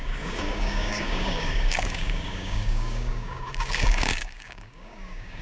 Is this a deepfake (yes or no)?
yes